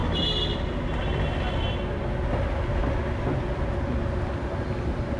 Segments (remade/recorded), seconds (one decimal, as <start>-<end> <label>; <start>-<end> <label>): 0.0-5.2 recorded